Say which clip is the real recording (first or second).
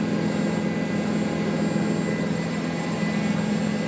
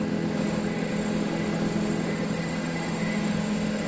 first